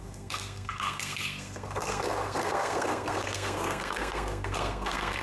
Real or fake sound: fake